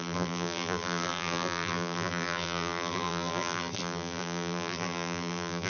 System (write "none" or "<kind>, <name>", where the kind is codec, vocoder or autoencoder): vocoder, BigVGAN v2